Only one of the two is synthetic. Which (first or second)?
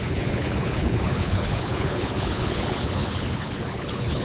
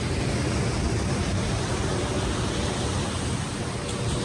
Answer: first